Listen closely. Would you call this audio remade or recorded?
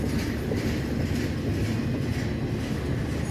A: recorded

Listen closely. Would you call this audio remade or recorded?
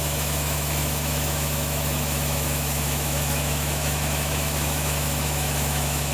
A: remade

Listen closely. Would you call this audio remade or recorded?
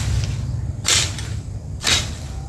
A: remade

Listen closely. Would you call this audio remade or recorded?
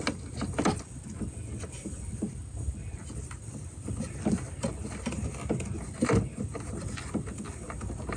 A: recorded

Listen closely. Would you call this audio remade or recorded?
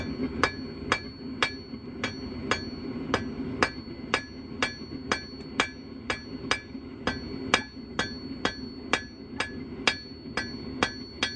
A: recorded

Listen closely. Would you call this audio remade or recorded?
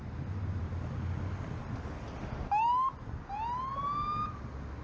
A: recorded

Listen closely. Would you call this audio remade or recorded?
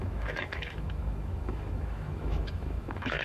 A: remade